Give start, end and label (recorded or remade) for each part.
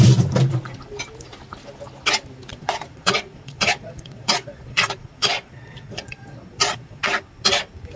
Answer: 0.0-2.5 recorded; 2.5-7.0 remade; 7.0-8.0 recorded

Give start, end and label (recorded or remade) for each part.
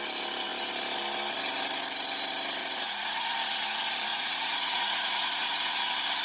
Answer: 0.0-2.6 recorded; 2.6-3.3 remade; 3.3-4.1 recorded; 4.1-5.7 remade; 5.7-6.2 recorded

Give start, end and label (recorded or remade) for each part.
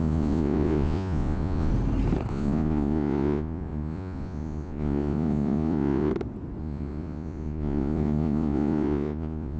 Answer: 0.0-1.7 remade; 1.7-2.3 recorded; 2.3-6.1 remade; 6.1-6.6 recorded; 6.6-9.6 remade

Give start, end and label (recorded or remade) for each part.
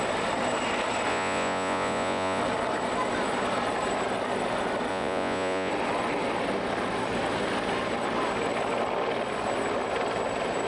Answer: 0.0-1.1 recorded; 1.1-2.4 remade; 2.4-4.9 recorded; 4.9-5.7 remade; 5.7-10.7 recorded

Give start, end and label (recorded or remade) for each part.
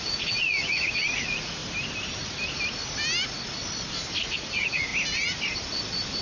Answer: 0.0-1.6 remade; 1.6-4.2 recorded; 4.2-4.9 remade; 4.9-6.2 recorded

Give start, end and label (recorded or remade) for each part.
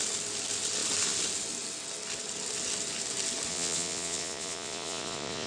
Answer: 0.0-3.5 recorded; 3.5-5.5 remade